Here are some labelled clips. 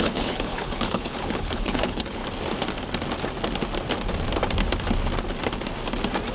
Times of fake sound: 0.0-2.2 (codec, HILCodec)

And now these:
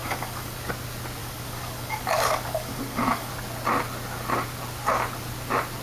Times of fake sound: 0.0-0.7 (codec, DAC); 1.2-3.3

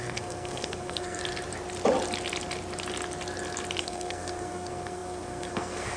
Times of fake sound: 0.0-1.2 (codec, SNAC); 3.8-6.0

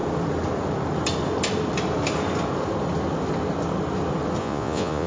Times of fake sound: 4.4-5.1 (vocoder, Vocos)